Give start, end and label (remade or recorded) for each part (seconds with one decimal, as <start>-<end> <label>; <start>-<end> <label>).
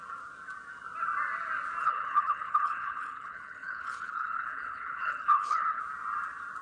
0.0-1.8 recorded; 1.8-5.8 remade; 5.8-6.6 recorded